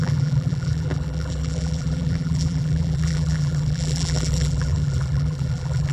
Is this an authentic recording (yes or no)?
no